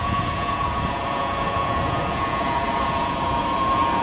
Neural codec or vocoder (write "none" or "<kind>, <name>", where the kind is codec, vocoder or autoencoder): vocoder, Vocos